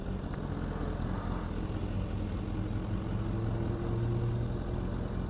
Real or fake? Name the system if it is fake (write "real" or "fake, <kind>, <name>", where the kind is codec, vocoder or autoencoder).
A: real